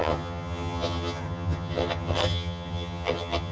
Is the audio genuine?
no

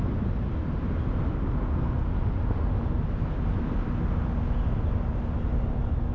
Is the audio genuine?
yes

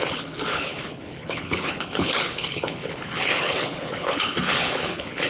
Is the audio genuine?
no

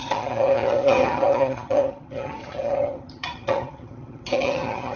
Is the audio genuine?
no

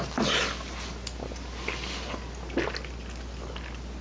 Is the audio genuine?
yes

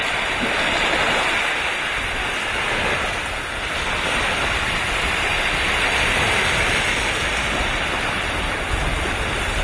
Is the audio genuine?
yes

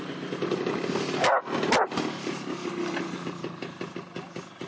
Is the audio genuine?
yes